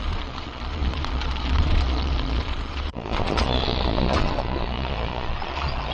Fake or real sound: fake